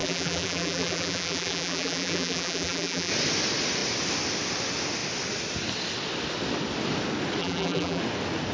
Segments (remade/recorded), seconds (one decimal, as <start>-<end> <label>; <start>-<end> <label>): 0.0-3.1 remade; 3.1-7.4 recorded; 7.4-8.0 remade; 8.0-8.5 recorded